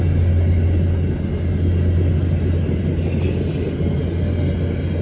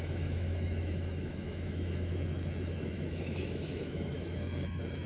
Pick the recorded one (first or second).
first